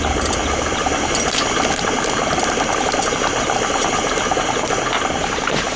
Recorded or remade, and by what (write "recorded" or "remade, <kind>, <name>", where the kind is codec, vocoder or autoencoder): remade, vocoder, BigVGAN v2